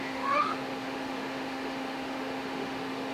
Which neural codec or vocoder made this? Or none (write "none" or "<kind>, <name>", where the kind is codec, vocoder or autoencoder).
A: autoencoder, DAC-VAE